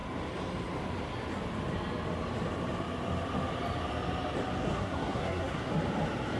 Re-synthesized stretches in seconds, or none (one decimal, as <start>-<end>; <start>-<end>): 4.7-5.7